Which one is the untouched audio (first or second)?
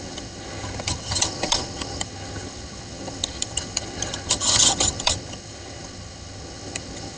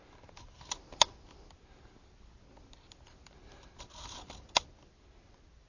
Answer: second